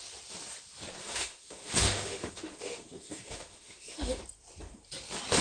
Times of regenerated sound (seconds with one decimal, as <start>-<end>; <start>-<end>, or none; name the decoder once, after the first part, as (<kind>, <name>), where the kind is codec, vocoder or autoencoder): 1.0-4.2 (autoencoder, DAC-VAE)